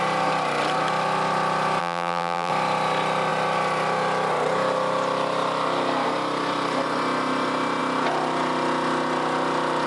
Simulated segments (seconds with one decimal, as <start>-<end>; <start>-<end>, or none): 1.8-2.5